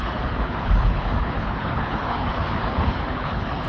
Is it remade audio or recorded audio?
remade